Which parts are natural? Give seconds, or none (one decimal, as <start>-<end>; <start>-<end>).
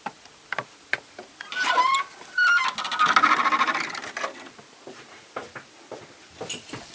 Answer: 0.0-6.9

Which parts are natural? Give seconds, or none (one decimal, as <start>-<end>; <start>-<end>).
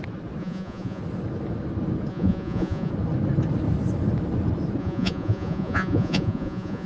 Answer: 0.0-0.4; 1.0-2.1; 2.9-4.8